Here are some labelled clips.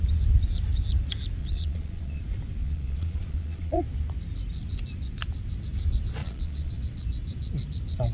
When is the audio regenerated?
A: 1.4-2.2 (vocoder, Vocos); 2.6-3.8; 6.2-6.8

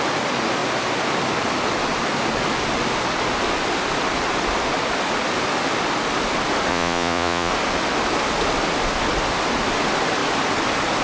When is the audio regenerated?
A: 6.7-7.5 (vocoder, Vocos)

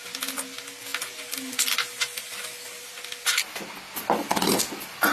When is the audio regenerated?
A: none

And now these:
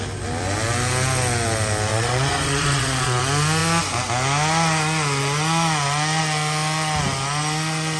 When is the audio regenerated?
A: 1.9-3.2 (vocoder, Vocos)